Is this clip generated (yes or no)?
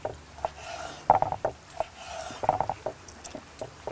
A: no